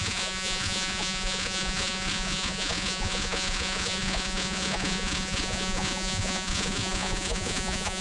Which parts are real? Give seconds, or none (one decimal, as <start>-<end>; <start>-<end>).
none